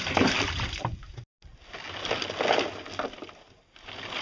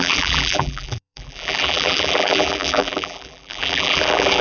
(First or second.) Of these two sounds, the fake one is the second